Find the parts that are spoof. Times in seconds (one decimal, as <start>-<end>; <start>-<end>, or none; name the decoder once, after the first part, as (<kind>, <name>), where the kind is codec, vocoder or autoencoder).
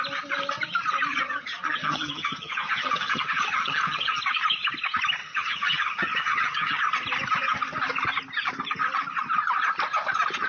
1.1-4.2 (vocoder, HiFi-GAN); 5.2-6.8